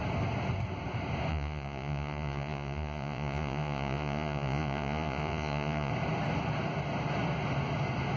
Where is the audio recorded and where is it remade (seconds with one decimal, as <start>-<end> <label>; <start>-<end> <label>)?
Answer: 0.0-1.3 recorded; 1.3-5.9 remade; 5.9-8.2 recorded